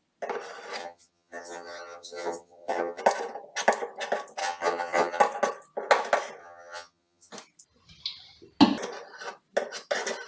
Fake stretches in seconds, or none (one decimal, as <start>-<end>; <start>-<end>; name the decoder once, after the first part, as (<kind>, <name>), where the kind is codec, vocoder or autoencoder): 0.8-3.0 (vocoder, HiFi-GAN); 4.4-5.2; 6.4-7.3